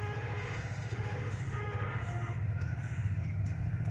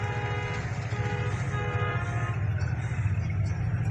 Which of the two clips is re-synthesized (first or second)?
first